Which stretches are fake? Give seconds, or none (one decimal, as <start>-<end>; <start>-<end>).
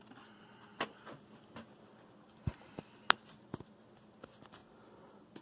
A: none